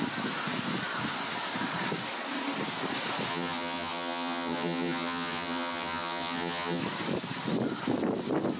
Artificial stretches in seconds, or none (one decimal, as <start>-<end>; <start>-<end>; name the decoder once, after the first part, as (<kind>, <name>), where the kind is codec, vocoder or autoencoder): 3.3-6.8 (vocoder, HiFi-GAN)